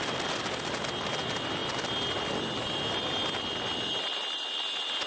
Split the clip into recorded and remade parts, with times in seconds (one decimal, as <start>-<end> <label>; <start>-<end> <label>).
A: 0.0-5.1 recorded